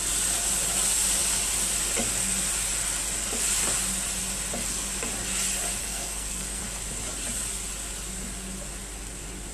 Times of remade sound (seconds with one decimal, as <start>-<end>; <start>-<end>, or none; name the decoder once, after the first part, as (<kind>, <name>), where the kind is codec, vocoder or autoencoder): 5.8-6.6 (codec, SNAC)

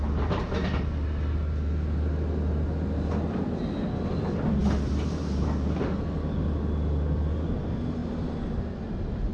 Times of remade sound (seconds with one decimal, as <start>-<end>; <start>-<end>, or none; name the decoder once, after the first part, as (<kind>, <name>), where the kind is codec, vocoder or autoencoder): none

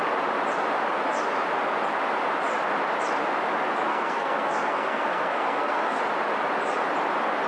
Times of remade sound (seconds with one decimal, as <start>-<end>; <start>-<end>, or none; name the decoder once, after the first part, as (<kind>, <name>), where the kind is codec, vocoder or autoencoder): 3.9-6.0 (codec, SNAC)

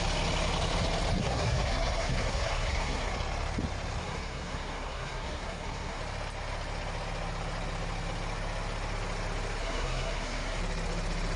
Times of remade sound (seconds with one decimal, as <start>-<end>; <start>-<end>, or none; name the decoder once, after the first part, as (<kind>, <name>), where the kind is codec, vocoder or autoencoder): 1.2-3.1 (codec, SNAC); 4.0-6.0; 9.6-10.6

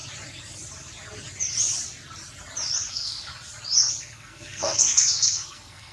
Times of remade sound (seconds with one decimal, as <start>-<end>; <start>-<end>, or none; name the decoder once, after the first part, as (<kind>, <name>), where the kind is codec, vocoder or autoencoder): 2.9-3.3 (codec, SNAC); 4.0-5.9

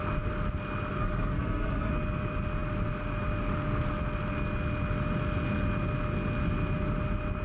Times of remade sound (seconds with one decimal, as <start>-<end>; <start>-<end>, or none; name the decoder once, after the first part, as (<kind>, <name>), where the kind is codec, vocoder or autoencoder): 0.9-1.9 (codec, SNAC)